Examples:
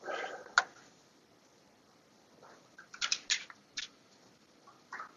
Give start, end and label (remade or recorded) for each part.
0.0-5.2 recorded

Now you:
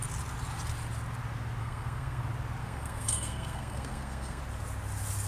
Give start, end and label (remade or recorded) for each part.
0.0-1.6 recorded; 1.6-2.2 remade; 2.2-2.6 recorded; 2.6-4.4 remade; 4.4-5.3 recorded

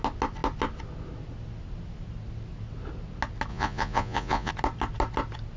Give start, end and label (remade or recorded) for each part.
0.0-3.5 recorded; 3.5-4.5 remade; 4.5-5.6 recorded

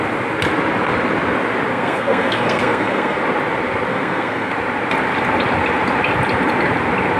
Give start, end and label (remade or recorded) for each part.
0.0-1.7 recorded; 1.7-3.2 remade; 3.2-3.9 recorded; 3.9-4.5 remade; 4.5-7.2 recorded

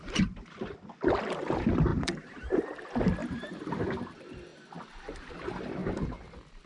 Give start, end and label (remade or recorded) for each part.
0.0-1.9 recorded; 1.9-2.6 remade; 2.6-3.2 recorded; 3.2-3.8 remade; 3.8-6.7 recorded